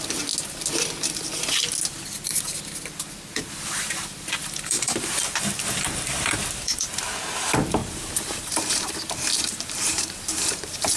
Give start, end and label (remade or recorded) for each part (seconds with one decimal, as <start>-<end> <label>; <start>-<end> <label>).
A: 0.0-1.0 recorded; 1.0-1.5 remade; 1.5-4.4 recorded; 4.4-7.0 remade; 7.0-7.8 recorded; 7.8-8.9 remade; 8.9-9.3 recorded; 9.3-11.0 remade